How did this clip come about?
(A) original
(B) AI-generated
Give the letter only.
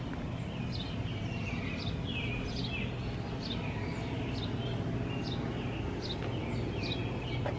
A